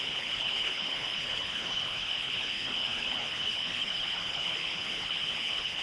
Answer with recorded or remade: remade